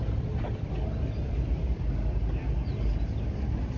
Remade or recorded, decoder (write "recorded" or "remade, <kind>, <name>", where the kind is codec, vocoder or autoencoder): recorded